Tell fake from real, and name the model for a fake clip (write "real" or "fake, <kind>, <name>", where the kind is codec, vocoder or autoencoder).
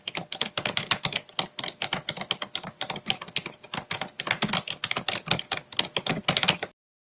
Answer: real